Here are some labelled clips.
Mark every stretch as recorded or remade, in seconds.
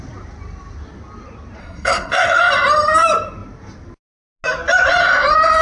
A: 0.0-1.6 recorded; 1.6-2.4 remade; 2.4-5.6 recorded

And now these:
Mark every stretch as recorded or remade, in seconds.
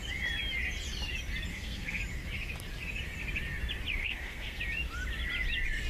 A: 0.0-1.5 recorded; 1.5-2.0 remade; 2.0-4.0 recorded; 4.0-4.6 remade; 4.6-5.9 recorded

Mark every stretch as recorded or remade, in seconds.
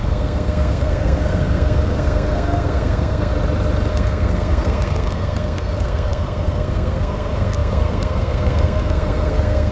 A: 0.0-3.3 remade; 3.3-3.9 recorded; 3.9-9.7 remade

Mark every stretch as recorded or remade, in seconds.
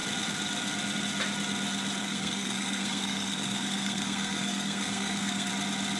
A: 0.0-2.0 recorded; 2.0-5.5 remade; 5.5-6.0 recorded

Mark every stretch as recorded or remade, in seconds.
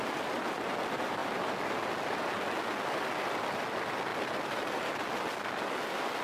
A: 0.0-6.2 recorded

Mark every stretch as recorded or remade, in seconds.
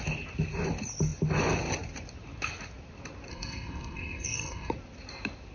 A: 0.0-3.3 recorded; 3.3-4.7 remade; 4.7-5.5 recorded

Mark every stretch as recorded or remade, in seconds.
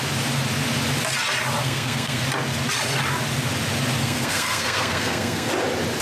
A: 0.0-1.6 recorded; 1.6-2.2 remade; 2.2-4.0 recorded; 4.0-5.5 remade; 5.5-6.0 recorded